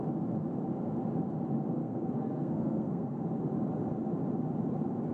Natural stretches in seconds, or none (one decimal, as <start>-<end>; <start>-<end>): 0.0-1.8; 3.2-5.1